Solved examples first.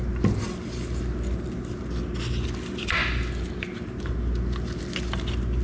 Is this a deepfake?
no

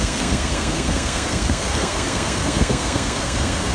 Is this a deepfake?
yes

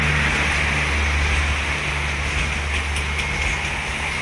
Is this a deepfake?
no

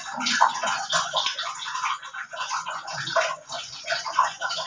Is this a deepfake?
yes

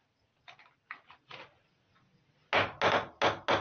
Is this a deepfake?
no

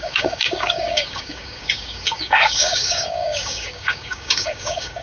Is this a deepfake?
yes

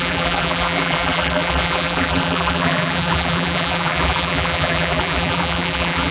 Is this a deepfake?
yes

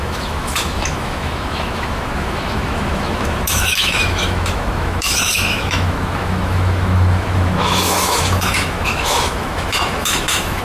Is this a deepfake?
yes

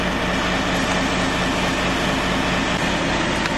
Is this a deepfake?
no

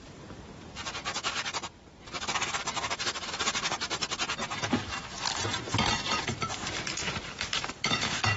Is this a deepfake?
yes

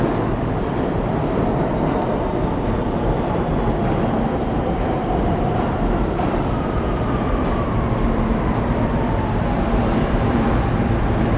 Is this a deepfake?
yes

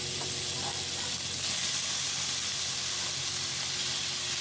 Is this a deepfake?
no